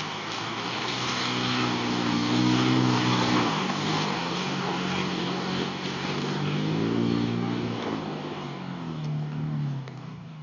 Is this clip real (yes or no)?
no